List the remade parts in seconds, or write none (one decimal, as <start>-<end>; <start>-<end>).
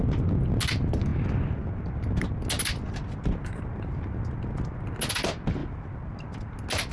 none